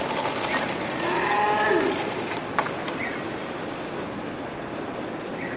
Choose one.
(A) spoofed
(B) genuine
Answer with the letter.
B